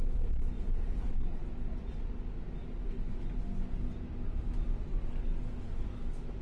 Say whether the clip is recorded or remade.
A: recorded